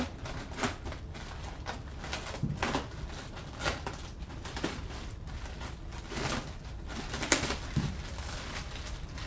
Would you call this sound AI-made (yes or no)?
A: no